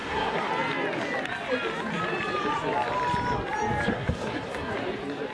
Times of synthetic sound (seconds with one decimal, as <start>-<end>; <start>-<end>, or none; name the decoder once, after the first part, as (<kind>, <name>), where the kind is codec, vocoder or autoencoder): 0.0-0.5 (codec, SNAC); 3.9-4.7